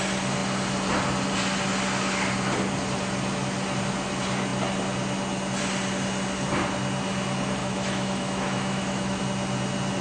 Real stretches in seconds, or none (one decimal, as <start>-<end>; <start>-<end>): 0.0-7.6; 9.2-10.0